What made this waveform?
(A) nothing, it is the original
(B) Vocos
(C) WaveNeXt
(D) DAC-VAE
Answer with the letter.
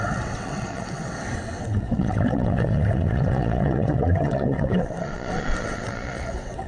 C